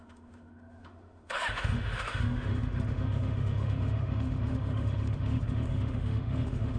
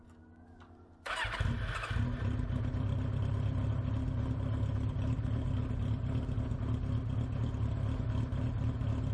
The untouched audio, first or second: second